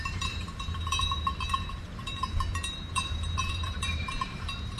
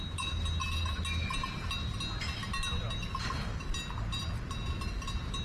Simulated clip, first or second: first